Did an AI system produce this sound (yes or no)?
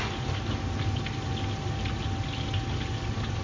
no